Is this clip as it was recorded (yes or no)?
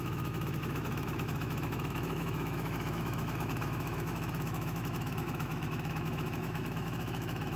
no